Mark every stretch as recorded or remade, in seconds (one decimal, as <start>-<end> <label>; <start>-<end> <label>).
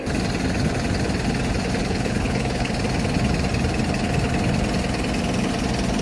0.0-1.8 recorded; 1.8-2.7 remade; 2.7-6.0 recorded